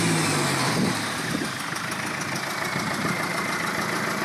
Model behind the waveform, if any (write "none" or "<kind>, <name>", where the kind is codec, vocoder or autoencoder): none